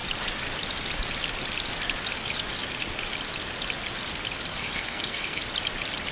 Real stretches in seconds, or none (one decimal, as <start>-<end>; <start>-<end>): 0.0-4.5; 5.4-6.1